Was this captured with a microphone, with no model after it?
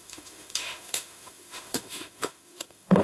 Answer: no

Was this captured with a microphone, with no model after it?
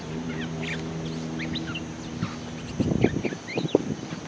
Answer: yes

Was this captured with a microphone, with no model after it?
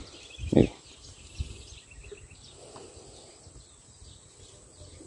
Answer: yes